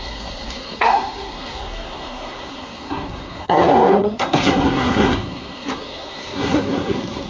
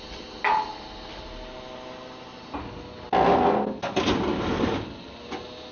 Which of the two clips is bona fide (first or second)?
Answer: second